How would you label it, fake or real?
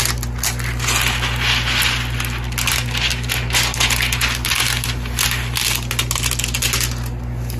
real